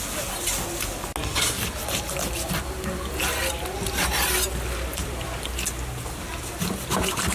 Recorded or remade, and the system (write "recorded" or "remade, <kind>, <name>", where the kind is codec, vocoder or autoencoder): recorded